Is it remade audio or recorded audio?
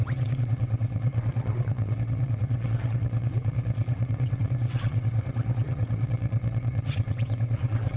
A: remade